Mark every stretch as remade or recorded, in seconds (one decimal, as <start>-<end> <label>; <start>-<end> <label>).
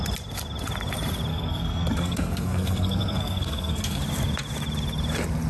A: 0.0-1.3 recorded; 1.3-4.0 remade; 4.0-5.5 recorded